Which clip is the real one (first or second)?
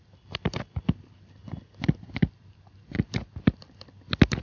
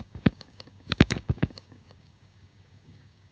first